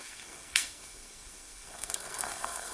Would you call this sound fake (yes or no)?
yes